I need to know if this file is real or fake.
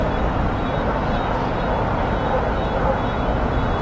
real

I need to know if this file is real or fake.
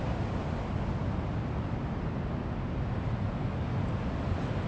real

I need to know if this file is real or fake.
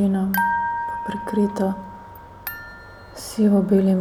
real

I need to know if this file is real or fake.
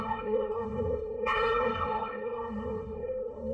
fake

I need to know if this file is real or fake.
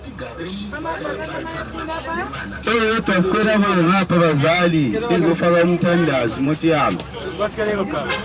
fake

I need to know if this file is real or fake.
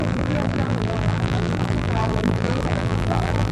fake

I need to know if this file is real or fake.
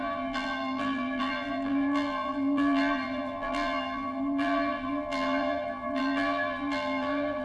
fake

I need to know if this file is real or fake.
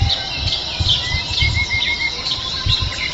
real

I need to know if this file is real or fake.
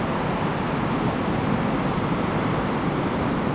real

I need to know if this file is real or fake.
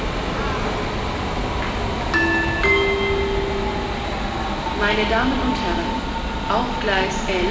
real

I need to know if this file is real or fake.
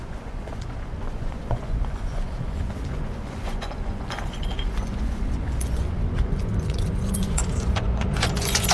fake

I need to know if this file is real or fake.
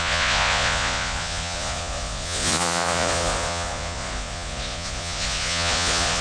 fake